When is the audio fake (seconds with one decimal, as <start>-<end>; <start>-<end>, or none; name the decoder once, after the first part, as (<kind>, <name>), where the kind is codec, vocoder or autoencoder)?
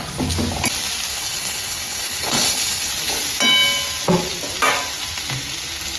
1.1-2.9 (codec, HILCodec)